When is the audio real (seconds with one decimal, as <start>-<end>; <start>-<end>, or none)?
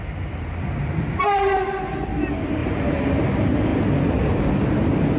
0.0-2.6; 3.1-5.2